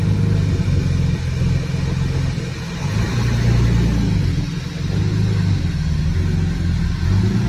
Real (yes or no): yes